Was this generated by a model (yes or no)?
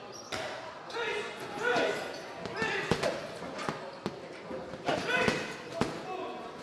no